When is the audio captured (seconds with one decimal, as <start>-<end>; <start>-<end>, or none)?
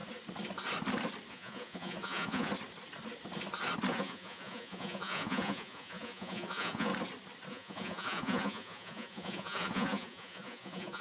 0.0-1.3; 2.5-3.9; 6.9-7.5